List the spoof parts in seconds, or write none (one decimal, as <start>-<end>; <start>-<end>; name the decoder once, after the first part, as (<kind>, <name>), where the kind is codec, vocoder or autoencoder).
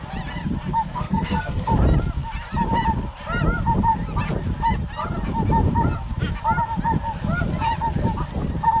0.9-1.7 (codec, SNAC)